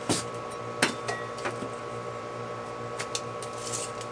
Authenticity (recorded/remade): recorded